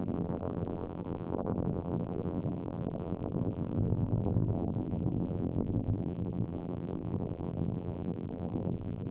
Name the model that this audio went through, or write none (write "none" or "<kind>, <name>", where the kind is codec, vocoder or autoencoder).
vocoder, BigVGAN v2